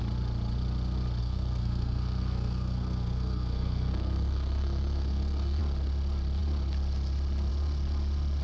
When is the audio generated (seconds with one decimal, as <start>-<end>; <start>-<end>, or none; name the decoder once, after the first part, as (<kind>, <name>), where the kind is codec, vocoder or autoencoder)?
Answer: 1.2-5.6 (codec, SNAC)